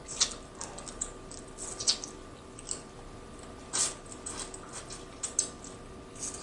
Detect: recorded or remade recorded